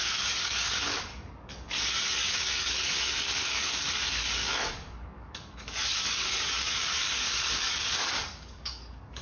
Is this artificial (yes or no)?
yes